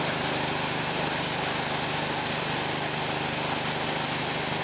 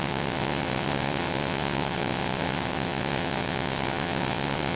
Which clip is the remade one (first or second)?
second